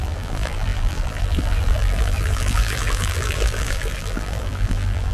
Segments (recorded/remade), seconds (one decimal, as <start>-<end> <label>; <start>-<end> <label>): 0.0-5.1 remade